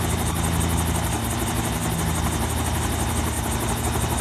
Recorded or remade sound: recorded